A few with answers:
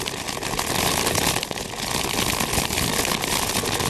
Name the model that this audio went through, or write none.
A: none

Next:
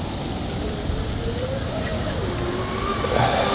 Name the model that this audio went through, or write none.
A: none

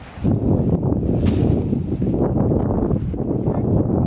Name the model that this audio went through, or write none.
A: none